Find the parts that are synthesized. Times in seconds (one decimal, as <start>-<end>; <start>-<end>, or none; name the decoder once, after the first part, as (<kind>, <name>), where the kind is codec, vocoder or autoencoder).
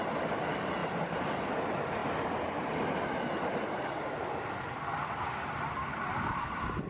0.8-1.5 (vocoder, BigVGAN v2)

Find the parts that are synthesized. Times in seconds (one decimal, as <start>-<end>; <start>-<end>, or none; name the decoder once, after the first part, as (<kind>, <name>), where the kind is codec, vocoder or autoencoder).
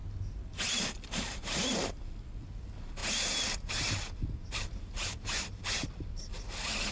4.4-5.6 (vocoder, BigVGAN v2)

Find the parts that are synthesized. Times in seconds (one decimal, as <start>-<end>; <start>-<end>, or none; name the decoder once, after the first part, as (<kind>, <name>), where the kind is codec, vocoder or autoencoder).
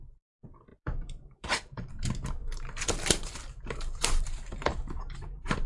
0.7-1.9 (vocoder, BigVGAN v2); 2.4-5.7